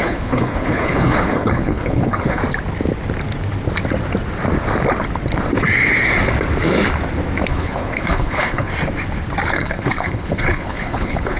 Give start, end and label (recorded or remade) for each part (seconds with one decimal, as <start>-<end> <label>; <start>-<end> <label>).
0.0-2.4 remade; 2.4-7.5 recorded; 7.5-8.7 remade; 8.7-9.5 recorded; 9.5-11.4 remade